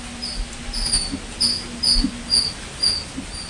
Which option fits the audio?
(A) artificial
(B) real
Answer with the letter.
B